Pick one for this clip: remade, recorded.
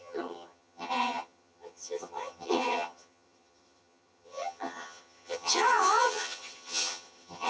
remade